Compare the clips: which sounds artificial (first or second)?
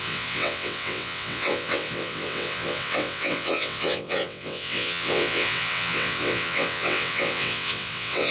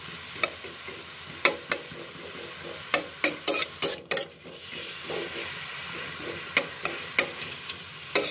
first